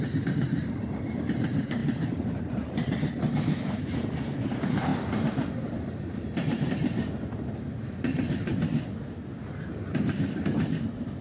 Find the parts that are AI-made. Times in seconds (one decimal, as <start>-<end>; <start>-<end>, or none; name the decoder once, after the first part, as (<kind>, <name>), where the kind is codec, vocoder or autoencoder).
0.0-8.5 (vocoder, BigVGAN v2); 9.2-11.2